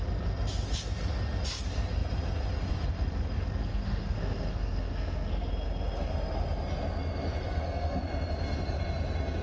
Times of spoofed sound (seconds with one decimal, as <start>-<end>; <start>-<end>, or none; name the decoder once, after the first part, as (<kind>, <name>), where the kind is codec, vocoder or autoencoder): 3.6-5.5 (codec, SNAC); 7.4-8.0